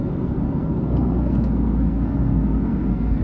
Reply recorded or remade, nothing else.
remade